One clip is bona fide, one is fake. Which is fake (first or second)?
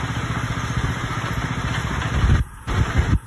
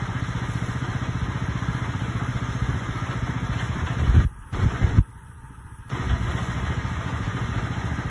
second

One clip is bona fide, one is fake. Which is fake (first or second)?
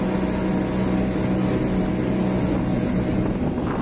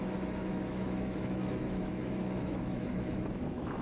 second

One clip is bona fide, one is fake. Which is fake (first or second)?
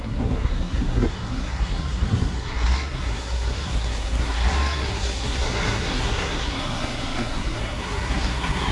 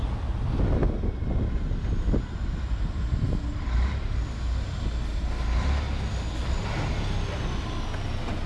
first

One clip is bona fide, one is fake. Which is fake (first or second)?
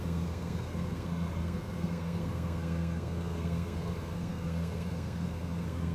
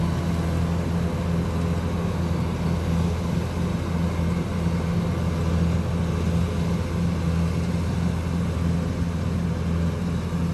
first